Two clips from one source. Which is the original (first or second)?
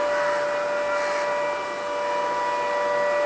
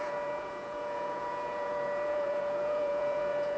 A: first